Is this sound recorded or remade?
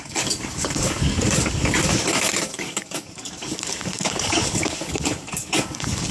remade